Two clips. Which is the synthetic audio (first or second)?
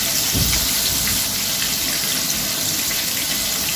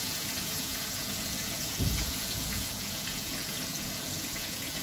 second